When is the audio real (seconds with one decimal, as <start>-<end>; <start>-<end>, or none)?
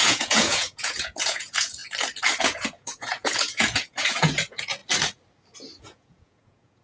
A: 1.8-2.4; 4.8-5.8